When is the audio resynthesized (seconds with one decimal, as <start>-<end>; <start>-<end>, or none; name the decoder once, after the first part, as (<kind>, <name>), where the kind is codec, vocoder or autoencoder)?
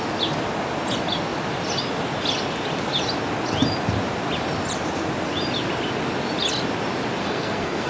7.2-7.9 (codec, SNAC)